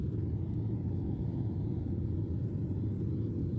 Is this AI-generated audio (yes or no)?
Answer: no